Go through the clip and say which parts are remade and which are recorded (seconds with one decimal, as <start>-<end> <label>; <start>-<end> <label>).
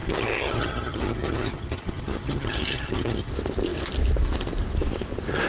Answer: 0.0-3.3 remade; 3.3-5.5 recorded